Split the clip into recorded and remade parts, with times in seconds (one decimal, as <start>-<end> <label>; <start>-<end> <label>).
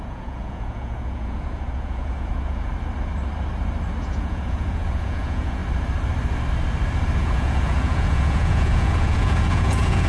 0.0-2.7 remade; 2.7-4.0 recorded; 4.0-5.6 remade; 5.6-7.2 recorded; 7.2-10.1 remade